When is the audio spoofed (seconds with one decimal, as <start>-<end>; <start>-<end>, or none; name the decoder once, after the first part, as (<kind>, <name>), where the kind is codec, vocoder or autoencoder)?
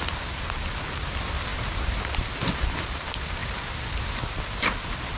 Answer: 1.5-2.8 (vocoder, BigVGAN v2)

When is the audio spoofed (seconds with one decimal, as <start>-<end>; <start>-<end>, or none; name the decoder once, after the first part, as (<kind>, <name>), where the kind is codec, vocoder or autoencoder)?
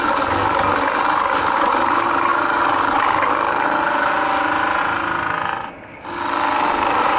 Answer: 0.4-1.7 (vocoder, BigVGAN v2)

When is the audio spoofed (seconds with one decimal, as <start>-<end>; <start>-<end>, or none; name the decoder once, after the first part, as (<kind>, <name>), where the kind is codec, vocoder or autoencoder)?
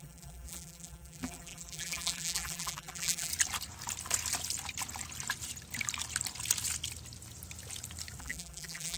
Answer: 0.0-3.3 (vocoder, BigVGAN v2); 8.2-9.0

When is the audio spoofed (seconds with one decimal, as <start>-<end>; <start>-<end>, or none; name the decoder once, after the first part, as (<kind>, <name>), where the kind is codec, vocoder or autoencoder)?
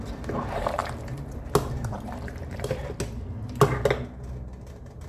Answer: 0.0-0.8 (vocoder, BigVGAN v2); 1.7-2.8; 4.6-5.1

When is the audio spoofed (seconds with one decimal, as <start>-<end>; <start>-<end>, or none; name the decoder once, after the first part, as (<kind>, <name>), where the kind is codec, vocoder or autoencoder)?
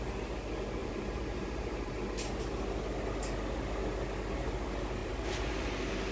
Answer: 0.8-1.9 (vocoder, BigVGAN v2); 5.0-5.5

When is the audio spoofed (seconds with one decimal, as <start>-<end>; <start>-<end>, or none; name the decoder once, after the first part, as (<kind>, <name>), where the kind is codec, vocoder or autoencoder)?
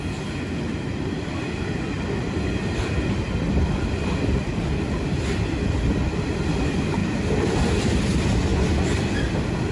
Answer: 3.4-4.6 (vocoder, BigVGAN v2); 7.0-7.5